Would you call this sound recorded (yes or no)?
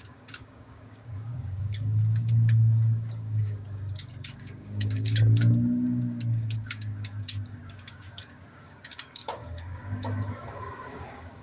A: no